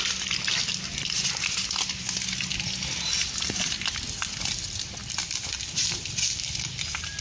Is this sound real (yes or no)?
yes